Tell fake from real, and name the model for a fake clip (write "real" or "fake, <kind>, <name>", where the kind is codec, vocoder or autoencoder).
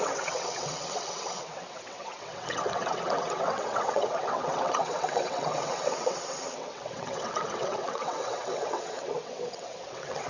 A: fake, vocoder, WaveNeXt